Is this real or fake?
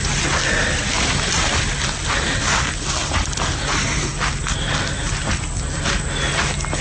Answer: real